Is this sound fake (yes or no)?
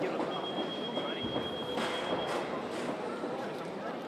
no